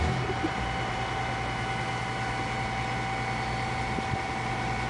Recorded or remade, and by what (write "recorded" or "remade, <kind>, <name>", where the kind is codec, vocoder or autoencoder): recorded